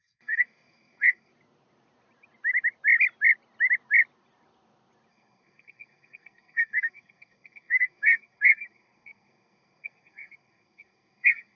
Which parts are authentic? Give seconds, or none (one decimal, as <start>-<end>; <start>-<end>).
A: 1.3-5.1